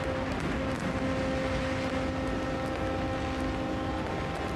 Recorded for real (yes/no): yes